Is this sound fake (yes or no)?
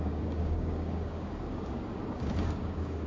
yes